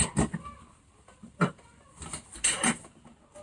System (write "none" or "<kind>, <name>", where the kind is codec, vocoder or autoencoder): none